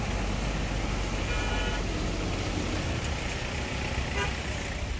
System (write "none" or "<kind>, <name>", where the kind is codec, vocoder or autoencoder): none